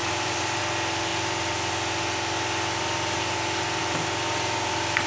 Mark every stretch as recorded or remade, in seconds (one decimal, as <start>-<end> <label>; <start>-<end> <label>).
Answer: 0.0-0.6 remade; 0.6-5.1 recorded